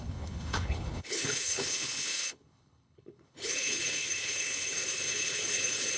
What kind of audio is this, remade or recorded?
remade